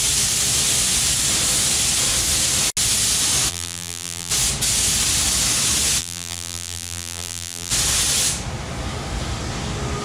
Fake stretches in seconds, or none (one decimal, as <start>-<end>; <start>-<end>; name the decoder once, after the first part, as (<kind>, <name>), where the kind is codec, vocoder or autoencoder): 3.5-4.3 (vocoder, BigVGAN v2); 6.0-7.7